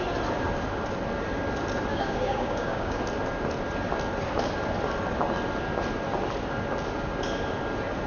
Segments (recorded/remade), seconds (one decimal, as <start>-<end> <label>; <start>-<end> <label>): 0.0-1.9 recorded; 1.9-3.0 remade; 3.0-8.1 recorded